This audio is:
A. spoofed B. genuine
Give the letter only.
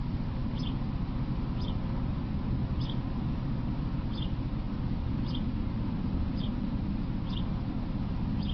B